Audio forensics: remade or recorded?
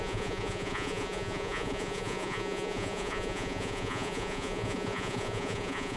remade